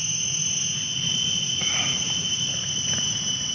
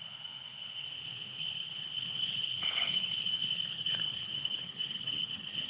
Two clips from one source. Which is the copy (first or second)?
second